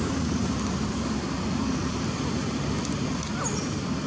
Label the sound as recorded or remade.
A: recorded